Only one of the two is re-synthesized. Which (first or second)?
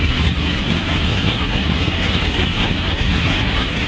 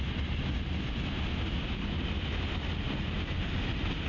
first